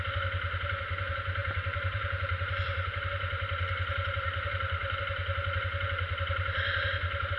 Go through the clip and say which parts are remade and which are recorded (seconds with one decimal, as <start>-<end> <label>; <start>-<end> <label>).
0.0-1.4 recorded; 1.4-2.9 remade; 2.9-7.4 recorded